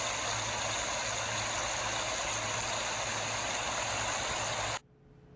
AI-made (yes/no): no